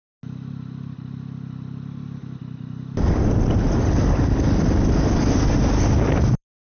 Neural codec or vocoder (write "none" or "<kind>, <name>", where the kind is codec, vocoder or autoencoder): none